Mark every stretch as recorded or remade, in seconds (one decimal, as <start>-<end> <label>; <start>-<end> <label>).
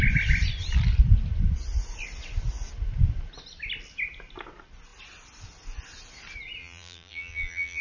0.0-6.6 recorded; 6.6-7.8 remade